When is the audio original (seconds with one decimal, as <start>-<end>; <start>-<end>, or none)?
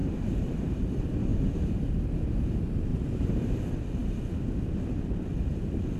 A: 0.8-1.3; 1.9-2.9; 3.5-6.0